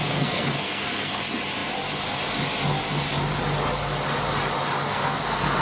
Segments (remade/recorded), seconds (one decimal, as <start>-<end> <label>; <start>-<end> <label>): 0.0-1.2 remade; 1.2-4.9 recorded; 4.9-5.6 remade